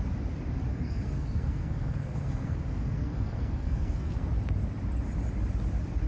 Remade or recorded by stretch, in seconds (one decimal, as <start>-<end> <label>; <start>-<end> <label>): 0.0-0.7 recorded; 0.7-4.3 remade; 4.3-6.1 recorded